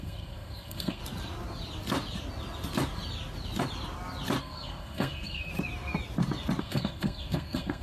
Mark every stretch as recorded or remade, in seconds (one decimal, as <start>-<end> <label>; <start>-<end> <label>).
0.0-1.0 remade; 1.0-4.4 recorded; 4.4-5.5 remade; 5.5-6.6 recorded; 6.6-7.8 remade